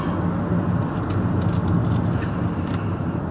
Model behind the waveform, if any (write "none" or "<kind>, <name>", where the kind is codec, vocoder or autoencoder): none